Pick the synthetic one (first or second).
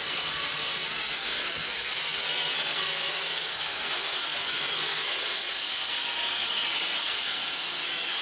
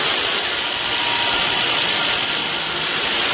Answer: first